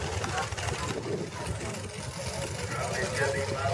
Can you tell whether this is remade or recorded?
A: recorded